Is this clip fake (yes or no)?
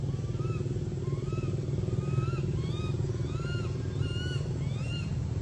no